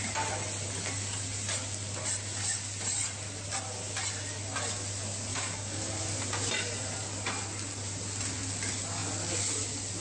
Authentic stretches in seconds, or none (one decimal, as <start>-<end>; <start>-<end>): 0.0-5.3; 5.9-10.0

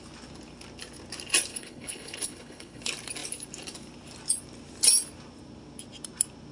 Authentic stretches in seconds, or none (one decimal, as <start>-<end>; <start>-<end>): 0.0-1.5; 2.8-6.5

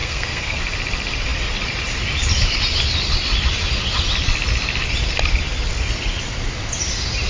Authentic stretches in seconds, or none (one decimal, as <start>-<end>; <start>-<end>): 0.6-7.3

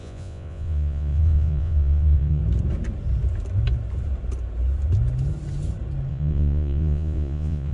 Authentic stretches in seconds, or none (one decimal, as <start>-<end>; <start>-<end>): 2.4-6.1

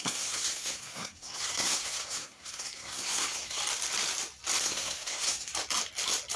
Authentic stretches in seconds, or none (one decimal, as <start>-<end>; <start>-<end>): 3.6-4.6; 5.5-6.4

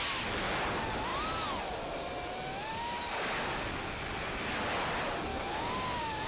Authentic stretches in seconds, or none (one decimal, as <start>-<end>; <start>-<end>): 0.0-5.3